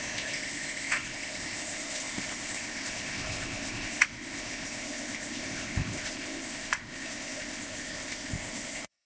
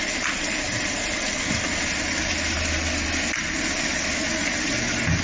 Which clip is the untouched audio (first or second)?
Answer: second